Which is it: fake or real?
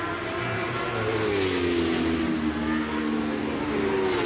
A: real